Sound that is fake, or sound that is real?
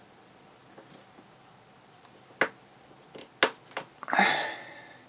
real